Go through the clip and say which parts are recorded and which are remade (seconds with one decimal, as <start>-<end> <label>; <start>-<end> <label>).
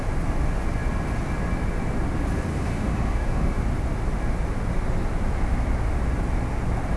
0.0-2.5 recorded; 2.5-3.6 remade; 3.6-7.0 recorded